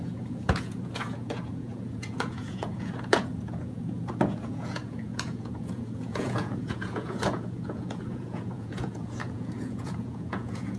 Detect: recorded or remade remade